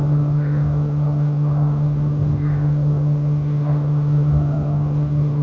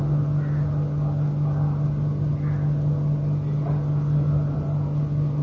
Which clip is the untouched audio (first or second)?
second